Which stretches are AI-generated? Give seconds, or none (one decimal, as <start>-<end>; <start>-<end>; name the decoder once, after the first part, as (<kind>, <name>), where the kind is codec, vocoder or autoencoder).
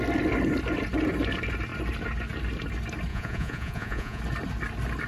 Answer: 3.1-4.2 (vocoder, Vocos)